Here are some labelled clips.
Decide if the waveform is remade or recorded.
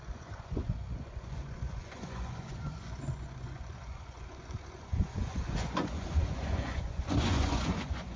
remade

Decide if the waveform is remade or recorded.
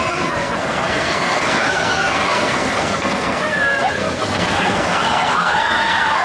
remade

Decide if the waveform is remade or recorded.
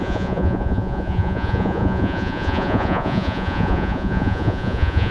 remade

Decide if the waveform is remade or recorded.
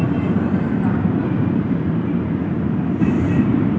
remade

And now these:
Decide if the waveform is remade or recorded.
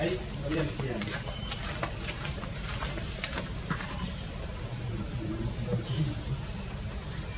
remade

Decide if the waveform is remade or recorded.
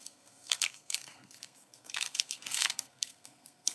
remade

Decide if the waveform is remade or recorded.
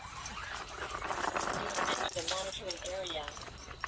recorded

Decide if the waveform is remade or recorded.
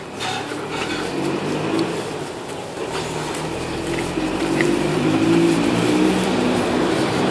remade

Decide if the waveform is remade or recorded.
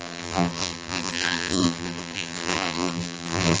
remade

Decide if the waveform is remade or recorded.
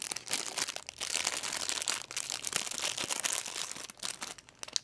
recorded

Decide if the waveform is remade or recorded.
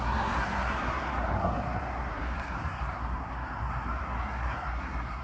remade